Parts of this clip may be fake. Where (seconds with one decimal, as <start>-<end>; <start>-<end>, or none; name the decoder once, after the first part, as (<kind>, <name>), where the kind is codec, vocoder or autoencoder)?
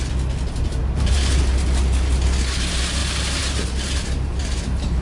0.8-1.4 (vocoder, BigVGAN v2); 3.0-4.0; 4.4-5.0